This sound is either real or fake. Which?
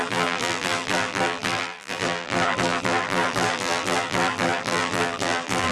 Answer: fake